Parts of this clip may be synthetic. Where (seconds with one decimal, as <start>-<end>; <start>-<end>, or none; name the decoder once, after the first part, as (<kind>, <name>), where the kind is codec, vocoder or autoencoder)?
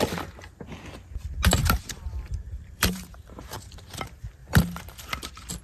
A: 1.6-3.9 (vocoder, BigVGAN v2); 4.4-5.1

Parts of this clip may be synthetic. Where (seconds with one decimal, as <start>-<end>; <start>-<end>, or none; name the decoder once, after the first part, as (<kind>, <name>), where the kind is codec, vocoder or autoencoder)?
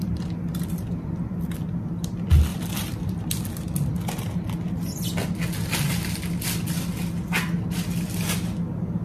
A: 2.5-3.5 (vocoder, BigVGAN v2)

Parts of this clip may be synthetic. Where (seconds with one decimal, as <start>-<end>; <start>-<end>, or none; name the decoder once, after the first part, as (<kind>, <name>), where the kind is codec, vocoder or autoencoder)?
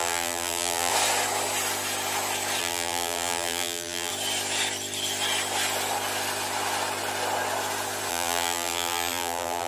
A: 0.0-0.9 (vocoder, BigVGAN v2); 2.6-4.1; 8.1-9.7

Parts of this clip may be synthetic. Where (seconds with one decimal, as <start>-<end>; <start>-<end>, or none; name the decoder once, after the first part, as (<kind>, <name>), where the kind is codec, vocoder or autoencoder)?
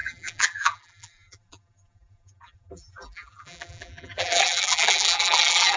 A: 0.0-5.8 (vocoder, BigVGAN v2)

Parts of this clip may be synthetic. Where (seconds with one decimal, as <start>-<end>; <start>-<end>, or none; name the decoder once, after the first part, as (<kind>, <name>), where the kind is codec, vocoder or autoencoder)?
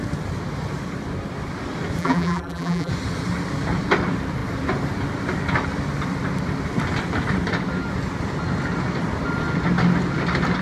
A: 2.0-2.9 (vocoder, BigVGAN v2)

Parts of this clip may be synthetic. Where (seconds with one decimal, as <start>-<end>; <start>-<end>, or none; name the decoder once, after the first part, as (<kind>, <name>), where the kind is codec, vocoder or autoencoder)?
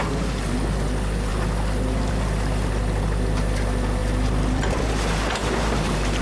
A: 1.3-2.1 (vocoder, BigVGAN v2); 4.0-4.8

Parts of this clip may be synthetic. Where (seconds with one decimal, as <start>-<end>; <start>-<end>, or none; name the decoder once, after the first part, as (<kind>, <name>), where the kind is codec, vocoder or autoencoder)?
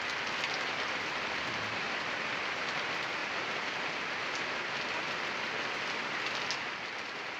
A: none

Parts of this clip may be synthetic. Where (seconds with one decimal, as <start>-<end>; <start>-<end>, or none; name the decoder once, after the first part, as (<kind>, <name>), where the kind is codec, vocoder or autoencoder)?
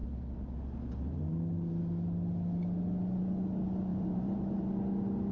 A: 3.9-4.6 (vocoder, BigVGAN v2)